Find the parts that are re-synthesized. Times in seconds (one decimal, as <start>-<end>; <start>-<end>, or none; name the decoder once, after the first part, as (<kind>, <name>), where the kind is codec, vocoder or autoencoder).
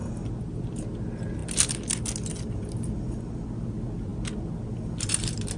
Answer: none